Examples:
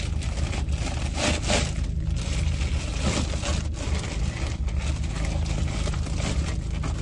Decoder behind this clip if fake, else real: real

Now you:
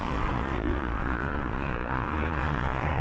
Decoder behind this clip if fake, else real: fake, vocoder, Vocos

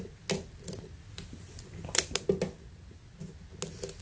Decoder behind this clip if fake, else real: real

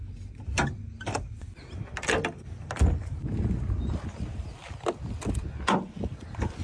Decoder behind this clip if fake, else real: real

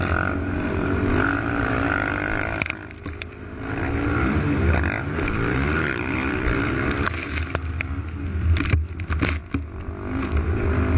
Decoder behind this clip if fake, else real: real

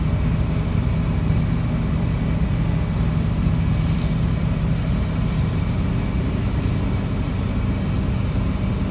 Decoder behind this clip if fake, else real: real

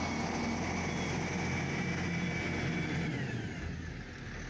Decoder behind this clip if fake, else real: real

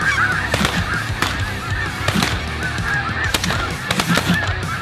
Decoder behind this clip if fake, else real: real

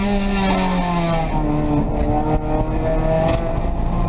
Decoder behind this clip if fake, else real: real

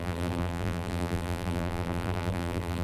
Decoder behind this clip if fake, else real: fake, vocoder, BigVGAN v2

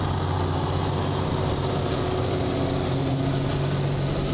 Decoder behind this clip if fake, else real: real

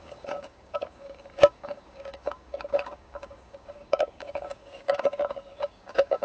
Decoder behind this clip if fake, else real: fake, codec, DAC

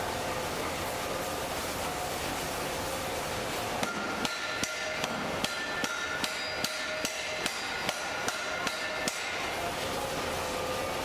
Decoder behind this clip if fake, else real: real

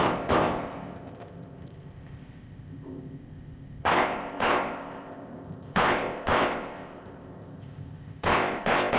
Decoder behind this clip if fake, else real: fake, codec, ZipCodec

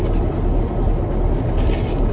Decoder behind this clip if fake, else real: real